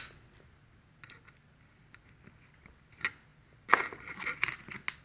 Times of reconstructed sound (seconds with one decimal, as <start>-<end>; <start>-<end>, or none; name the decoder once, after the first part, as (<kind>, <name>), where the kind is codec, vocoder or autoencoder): none